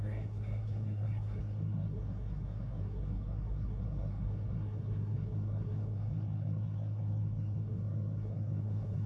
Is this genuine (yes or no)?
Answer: no